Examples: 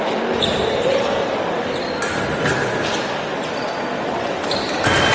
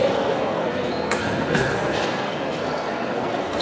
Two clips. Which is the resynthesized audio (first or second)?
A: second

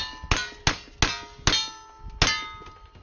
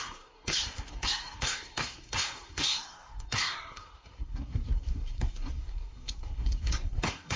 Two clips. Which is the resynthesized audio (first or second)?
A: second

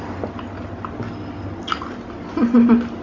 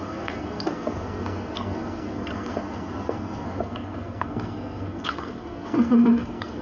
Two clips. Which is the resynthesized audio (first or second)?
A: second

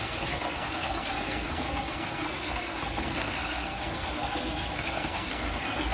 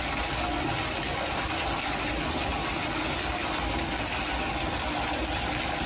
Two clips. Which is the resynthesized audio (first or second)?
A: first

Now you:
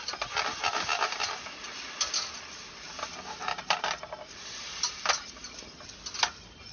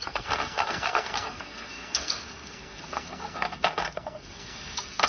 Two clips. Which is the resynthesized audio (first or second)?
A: second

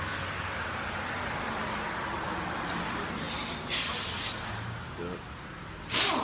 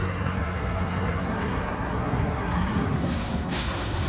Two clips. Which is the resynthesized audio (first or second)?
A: second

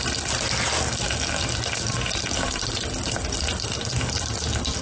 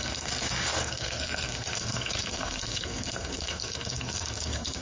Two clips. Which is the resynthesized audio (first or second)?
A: second